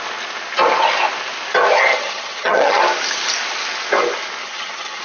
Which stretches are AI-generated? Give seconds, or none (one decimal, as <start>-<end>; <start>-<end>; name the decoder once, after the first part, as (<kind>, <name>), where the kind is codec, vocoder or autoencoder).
1.9-2.8 (vocoder, HiFi-GAN); 4.4-5.0